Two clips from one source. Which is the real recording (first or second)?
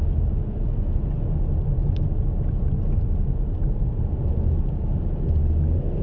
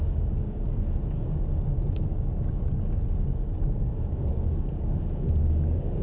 first